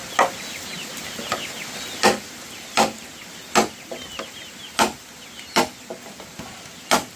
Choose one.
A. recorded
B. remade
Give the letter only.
A